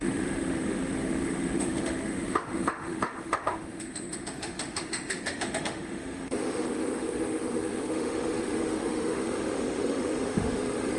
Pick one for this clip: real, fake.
fake